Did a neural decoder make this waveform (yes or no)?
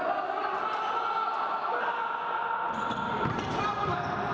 no